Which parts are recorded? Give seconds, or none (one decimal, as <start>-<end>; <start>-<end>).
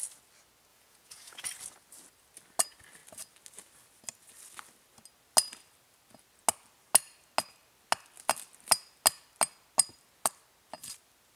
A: 0.0-0.7; 1.5-11.4